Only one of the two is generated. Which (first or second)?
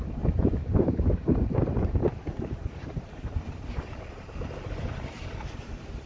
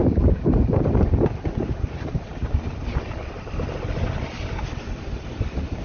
first